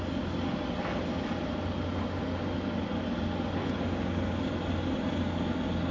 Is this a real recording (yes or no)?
yes